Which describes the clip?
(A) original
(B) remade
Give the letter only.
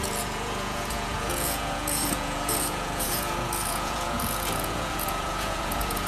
B